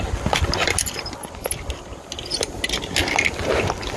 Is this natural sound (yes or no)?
yes